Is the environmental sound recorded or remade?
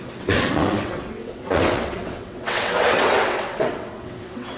remade